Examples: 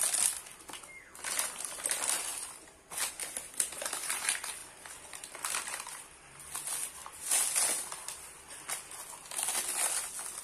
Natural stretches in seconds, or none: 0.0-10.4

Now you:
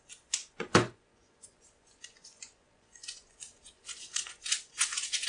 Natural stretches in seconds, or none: none

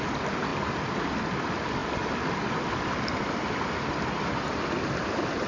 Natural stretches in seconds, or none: 0.0-5.5

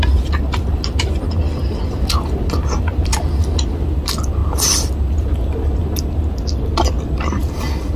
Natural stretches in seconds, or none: 0.0-8.0